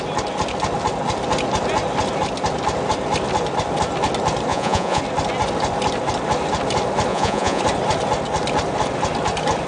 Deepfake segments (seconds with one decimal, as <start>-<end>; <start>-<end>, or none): 4.5-5.0; 7.1-7.6